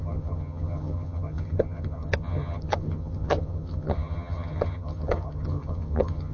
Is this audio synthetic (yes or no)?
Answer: yes